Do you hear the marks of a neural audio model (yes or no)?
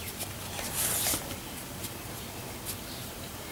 no